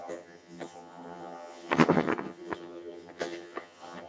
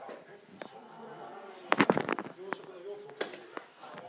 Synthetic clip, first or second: first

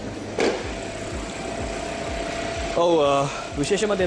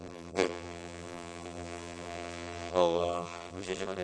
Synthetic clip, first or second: second